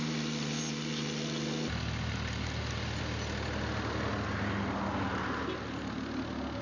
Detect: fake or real real